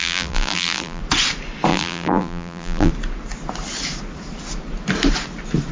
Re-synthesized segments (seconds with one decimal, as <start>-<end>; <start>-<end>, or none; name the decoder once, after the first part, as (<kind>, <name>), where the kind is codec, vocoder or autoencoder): 0.0-1.0 (vocoder, BigVGAN v2); 1.7-2.9